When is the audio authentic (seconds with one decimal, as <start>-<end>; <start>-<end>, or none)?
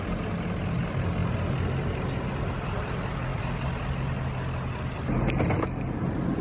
0.0-6.4